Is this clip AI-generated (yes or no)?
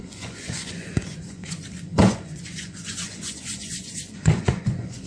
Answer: yes